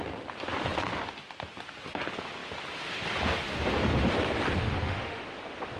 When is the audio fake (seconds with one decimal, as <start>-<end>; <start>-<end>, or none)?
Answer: 4.6-5.2